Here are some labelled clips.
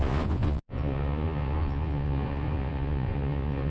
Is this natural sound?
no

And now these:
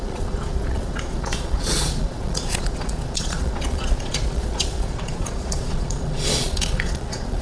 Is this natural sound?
no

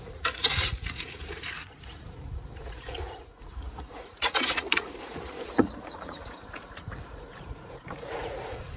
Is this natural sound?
no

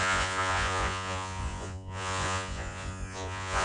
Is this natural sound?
no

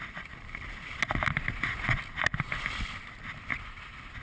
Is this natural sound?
yes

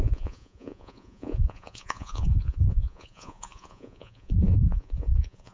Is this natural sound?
no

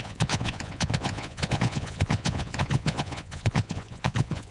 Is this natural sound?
no